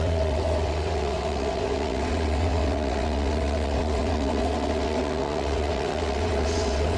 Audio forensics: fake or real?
fake